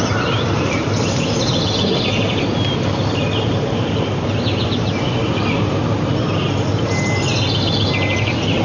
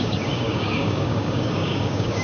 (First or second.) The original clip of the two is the first